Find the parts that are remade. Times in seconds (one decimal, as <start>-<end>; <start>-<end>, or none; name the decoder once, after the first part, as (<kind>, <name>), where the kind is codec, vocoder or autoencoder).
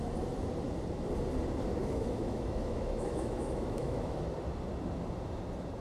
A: 1.8-4.2 (autoencoder, DAC-VAE)